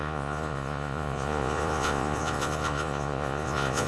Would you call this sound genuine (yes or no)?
no